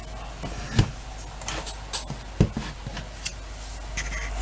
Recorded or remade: recorded